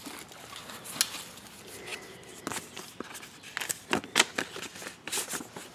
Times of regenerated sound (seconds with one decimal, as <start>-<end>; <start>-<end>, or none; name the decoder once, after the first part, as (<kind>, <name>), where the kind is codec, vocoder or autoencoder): none